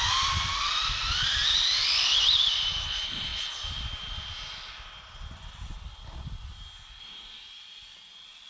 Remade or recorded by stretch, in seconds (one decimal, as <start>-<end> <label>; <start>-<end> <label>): 0.0-3.3 remade; 3.3-7.0 recorded; 7.0-8.5 remade